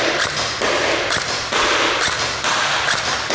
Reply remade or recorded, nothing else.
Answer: remade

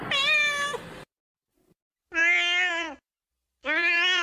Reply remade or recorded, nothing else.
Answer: recorded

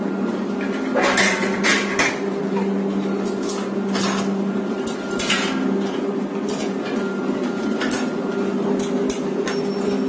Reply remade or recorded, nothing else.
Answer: recorded